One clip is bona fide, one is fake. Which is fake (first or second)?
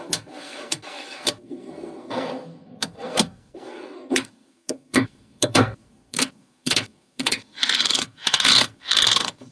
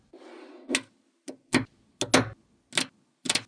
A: first